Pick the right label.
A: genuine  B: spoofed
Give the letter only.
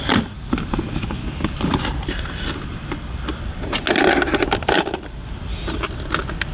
A